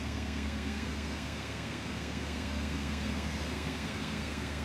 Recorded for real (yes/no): no